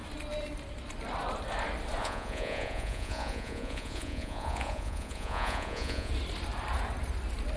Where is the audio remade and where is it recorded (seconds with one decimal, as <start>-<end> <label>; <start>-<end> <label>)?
0.0-2.0 recorded; 2.0-6.1 remade; 6.1-7.6 recorded